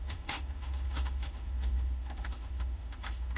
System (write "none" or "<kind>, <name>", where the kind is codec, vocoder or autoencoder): autoencoder, DAC-VAE